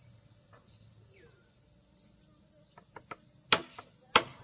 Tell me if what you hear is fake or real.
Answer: real